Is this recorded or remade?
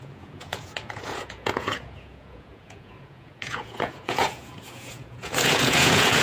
remade